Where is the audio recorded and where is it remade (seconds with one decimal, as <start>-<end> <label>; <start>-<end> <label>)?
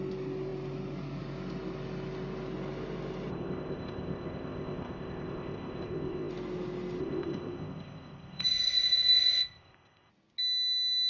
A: 0.0-3.3 recorded; 3.3-6.3 remade; 6.3-7.0 recorded; 7.0-10.1 remade; 10.1-11.1 recorded